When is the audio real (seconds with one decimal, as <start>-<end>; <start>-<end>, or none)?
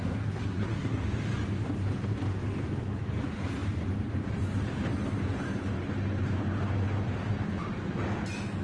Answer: 1.0-8.6